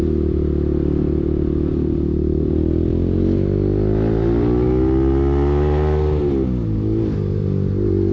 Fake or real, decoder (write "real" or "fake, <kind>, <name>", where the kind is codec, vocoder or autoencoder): real